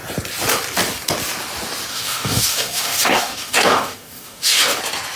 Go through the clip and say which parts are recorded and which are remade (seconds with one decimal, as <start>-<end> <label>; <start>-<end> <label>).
0.0-1.9 recorded; 1.9-4.8 remade; 4.8-5.2 recorded